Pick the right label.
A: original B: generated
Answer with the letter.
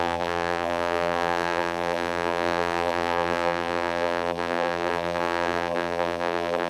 B